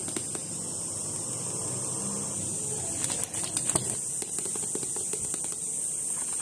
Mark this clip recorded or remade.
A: recorded